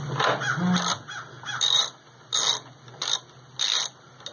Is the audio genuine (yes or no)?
yes